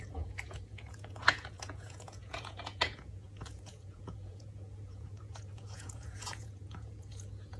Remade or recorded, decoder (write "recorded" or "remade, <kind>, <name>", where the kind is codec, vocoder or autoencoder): remade, vocoder, Vocos